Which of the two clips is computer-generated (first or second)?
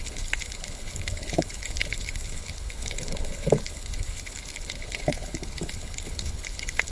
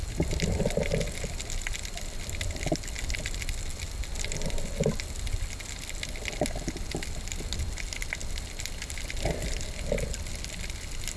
first